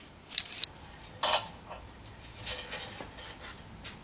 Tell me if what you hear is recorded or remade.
recorded